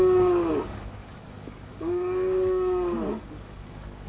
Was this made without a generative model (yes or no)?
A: no